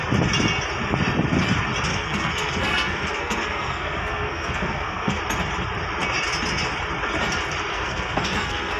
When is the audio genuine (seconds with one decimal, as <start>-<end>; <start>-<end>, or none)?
0.0-1.9; 5.2-7.7